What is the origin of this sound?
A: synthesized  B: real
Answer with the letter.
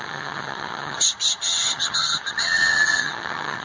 A